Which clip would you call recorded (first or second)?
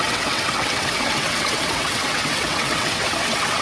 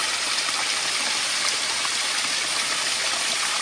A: second